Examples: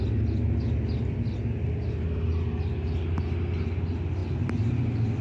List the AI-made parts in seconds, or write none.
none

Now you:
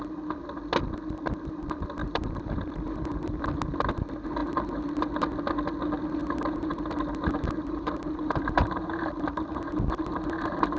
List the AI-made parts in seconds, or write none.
2.0-3.4 (vocoder, BigVGAN v2); 4.4-4.9; 6.2-10.0